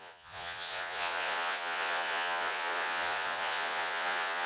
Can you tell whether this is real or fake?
fake